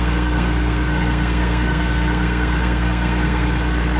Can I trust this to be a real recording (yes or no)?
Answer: no